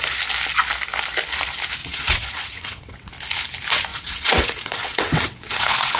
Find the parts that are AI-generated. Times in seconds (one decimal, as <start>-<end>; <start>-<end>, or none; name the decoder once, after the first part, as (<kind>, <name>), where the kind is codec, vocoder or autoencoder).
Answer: 1.8-3.1 (vocoder, WaveNeXt); 3.9-6.0